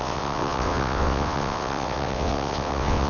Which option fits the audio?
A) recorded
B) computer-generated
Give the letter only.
B